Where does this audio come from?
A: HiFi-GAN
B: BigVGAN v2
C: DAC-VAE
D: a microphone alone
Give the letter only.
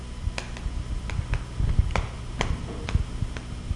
D